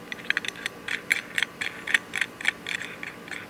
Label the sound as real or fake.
real